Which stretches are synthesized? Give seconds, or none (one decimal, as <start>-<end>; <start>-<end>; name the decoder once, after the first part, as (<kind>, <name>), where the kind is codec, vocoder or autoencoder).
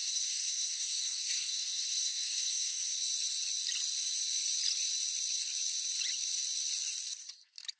0.0-3.0 (codec, SNAC)